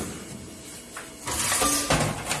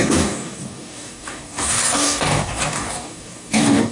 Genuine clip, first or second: first